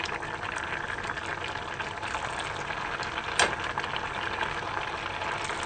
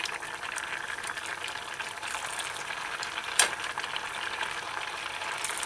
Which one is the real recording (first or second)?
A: first